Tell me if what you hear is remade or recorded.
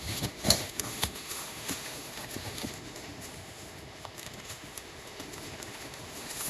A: remade